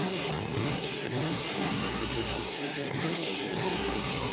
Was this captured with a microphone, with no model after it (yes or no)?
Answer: no